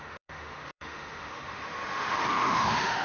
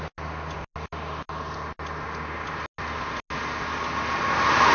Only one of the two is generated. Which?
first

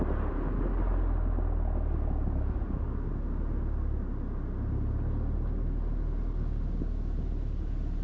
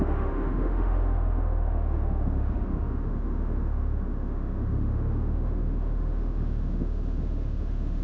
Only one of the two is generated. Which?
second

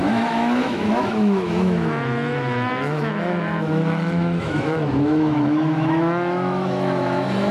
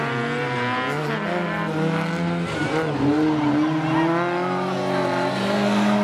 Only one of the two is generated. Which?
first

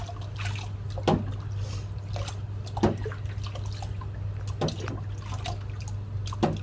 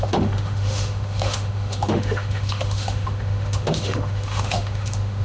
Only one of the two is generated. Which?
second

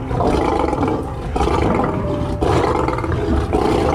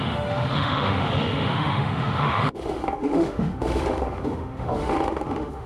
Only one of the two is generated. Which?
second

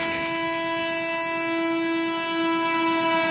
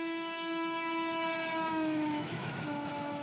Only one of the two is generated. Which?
second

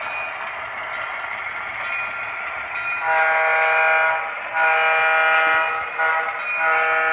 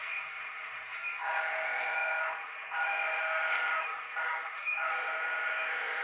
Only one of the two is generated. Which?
second